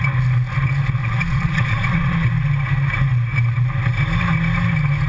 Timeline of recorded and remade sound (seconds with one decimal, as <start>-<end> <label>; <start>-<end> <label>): 0.0-1.0 recorded; 1.0-2.3 remade; 2.3-5.1 recorded

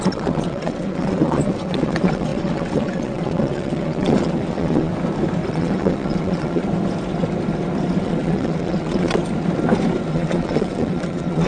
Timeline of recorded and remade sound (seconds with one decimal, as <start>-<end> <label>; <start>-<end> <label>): 0.0-4.9 remade; 4.9-5.5 recorded; 5.5-6.6 remade; 6.6-8.0 recorded; 8.0-9.2 remade; 9.2-10.1 recorded; 10.1-11.5 remade